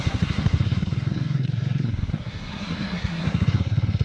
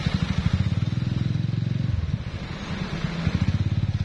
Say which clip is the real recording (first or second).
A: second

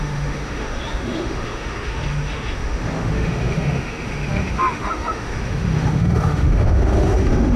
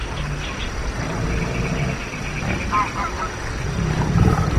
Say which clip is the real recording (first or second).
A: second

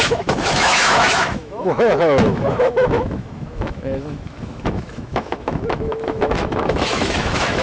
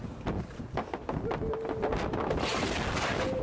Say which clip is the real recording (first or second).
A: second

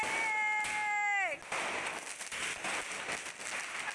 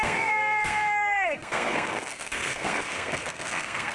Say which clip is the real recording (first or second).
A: first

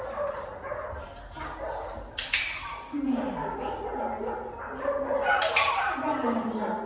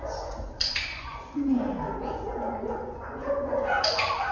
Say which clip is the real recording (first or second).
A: first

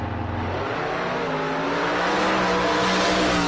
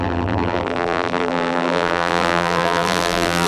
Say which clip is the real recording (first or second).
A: first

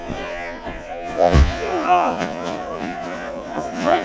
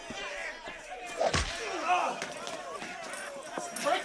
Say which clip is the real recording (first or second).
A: second